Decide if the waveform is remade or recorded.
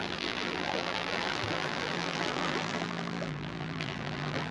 remade